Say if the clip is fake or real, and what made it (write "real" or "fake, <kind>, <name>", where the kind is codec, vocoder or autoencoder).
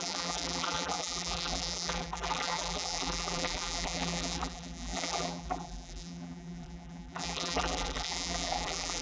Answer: fake, vocoder, BigVGAN v2